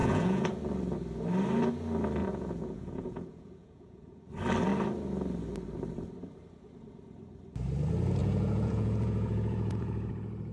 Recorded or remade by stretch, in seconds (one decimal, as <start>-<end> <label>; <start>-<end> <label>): 0.0-0.6 remade; 0.6-2.2 recorded; 2.2-4.2 remade; 4.2-8.2 recorded; 8.2-10.1 remade; 10.1-10.5 recorded